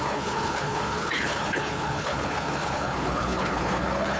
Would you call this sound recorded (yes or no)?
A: no